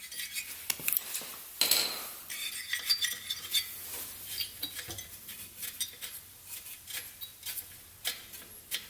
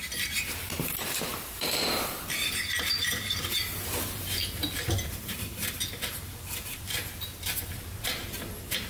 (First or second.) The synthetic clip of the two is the second